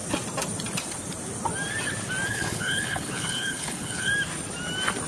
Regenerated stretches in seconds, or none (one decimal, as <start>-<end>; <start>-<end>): 2.3-4.1